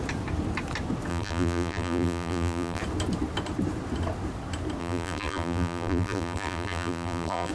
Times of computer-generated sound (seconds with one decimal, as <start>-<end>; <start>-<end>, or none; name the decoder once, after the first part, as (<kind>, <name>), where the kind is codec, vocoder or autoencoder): 1.1-2.8 (vocoder, BigVGAN v2); 4.8-7.5